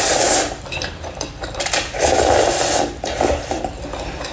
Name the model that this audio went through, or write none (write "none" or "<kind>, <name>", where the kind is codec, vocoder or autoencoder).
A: vocoder, BigVGAN v2